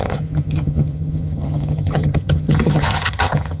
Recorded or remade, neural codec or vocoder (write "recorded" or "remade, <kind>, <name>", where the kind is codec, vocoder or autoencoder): remade, vocoder, HiFi-GAN